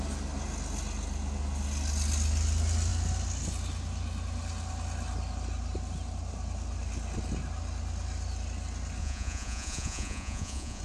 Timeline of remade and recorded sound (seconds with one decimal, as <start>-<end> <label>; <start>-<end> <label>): 0.0-9.0 recorded; 9.0-10.8 remade